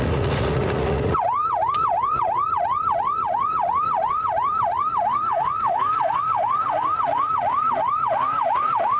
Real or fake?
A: fake